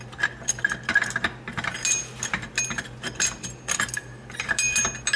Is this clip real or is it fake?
real